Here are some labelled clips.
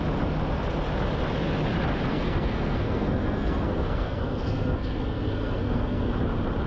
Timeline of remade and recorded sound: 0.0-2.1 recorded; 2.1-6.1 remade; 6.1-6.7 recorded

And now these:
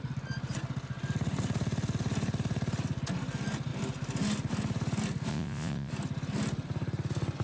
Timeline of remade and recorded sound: 0.0-5.3 recorded; 5.3-5.9 remade; 5.9-7.4 recorded

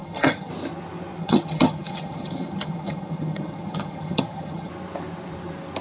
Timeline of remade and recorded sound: 0.0-0.5 remade; 0.5-1.2 recorded; 1.2-4.7 remade; 4.7-5.8 recorded

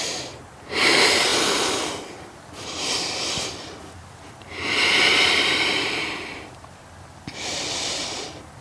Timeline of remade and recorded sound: 0.0-8.6 remade

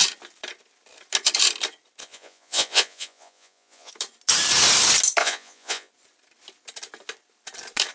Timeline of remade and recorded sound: 0.0-2.0 recorded; 2.0-3.9 remade; 3.9-5.2 recorded; 5.2-5.9 remade; 5.9-7.9 recorded